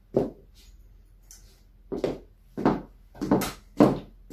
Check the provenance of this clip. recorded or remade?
recorded